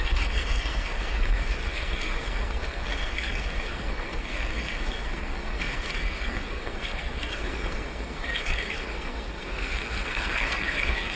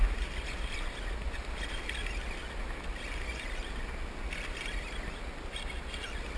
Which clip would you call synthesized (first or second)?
first